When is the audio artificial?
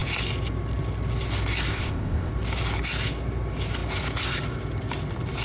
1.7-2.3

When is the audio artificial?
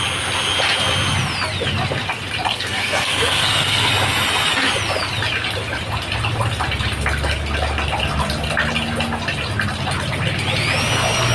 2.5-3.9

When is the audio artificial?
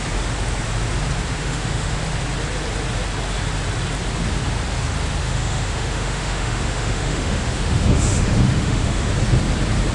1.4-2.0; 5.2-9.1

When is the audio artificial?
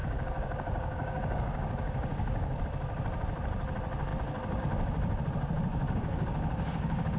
0.0-2.6; 5.7-7.2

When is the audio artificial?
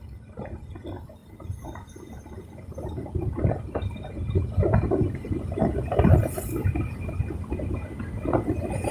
1.2-6.1; 6.6-7.1